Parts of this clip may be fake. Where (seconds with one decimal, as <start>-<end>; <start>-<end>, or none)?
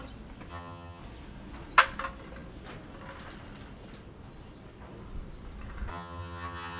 0.5-1.0; 5.9-6.8